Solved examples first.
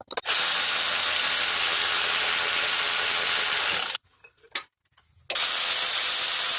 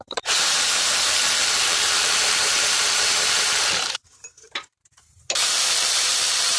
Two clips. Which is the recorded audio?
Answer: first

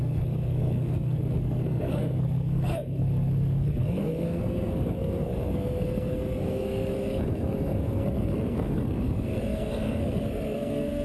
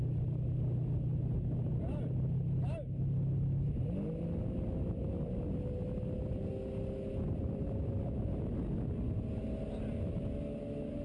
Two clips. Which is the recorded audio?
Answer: second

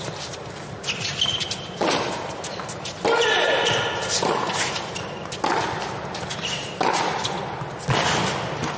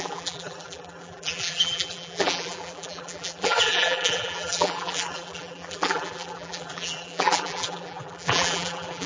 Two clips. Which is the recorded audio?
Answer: first